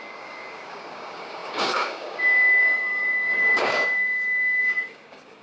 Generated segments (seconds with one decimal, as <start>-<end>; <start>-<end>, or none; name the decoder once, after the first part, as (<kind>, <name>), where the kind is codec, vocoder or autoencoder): 0.0-5.4 (codec, DAC)